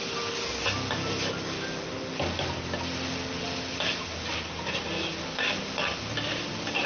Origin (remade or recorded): recorded